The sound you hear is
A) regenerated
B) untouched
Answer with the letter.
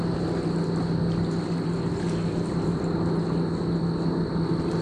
B